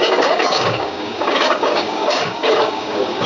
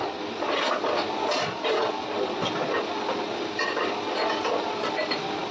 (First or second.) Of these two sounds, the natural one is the second